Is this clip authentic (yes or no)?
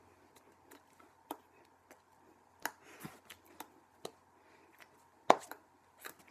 yes